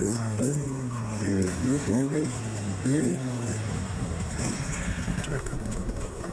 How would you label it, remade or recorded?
remade